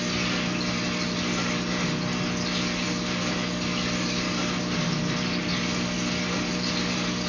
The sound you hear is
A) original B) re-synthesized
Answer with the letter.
A